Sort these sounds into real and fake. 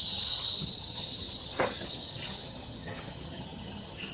fake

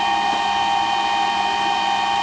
real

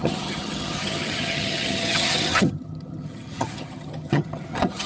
fake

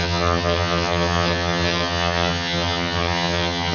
fake